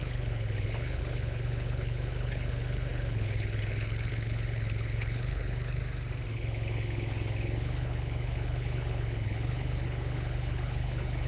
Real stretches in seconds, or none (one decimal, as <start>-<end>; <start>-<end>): 5.8-6.3